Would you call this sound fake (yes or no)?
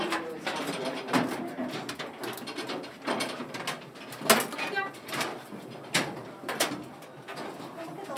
no